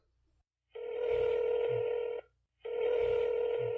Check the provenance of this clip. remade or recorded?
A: recorded